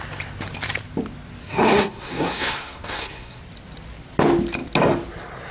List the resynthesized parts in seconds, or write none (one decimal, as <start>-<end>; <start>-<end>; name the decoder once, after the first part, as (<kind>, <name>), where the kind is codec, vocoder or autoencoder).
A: 1.4-3.4 (codec, SNAC)